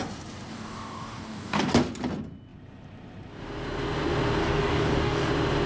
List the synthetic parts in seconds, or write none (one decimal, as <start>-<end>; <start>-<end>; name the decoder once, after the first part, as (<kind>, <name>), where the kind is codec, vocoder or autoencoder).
0.5-1.7 (codec, DAC); 4.4-5.3